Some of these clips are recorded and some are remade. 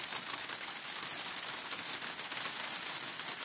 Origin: recorded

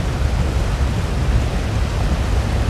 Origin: recorded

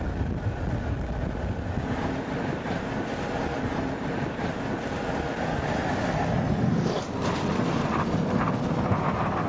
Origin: remade